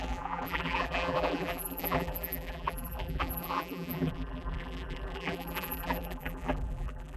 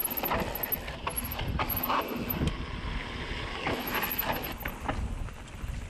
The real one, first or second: second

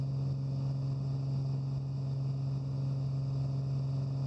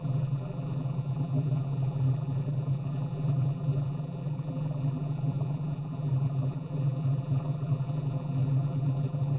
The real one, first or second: first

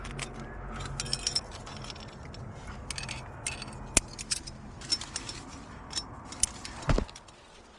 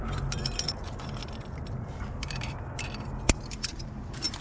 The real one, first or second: first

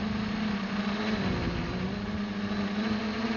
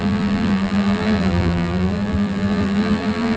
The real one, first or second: first